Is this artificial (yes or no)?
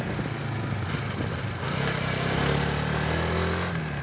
no